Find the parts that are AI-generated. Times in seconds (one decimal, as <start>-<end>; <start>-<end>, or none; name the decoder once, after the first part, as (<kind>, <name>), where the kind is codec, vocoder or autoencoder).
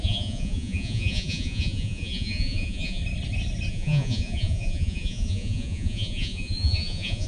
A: 0.0-3.0 (vocoder, Vocos); 3.7-7.3